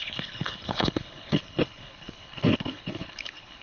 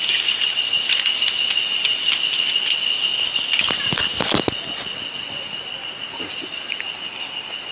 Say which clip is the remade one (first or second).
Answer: first